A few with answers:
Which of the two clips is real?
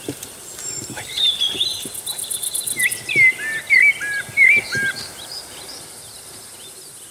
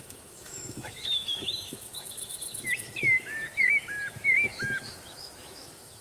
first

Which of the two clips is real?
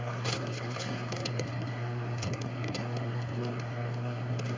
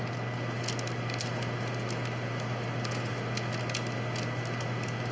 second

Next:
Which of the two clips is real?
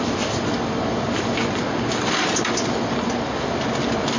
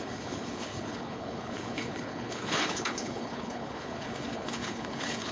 first